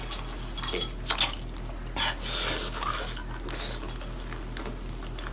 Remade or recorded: recorded